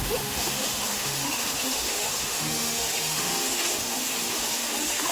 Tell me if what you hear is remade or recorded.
remade